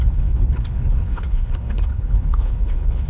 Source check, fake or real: fake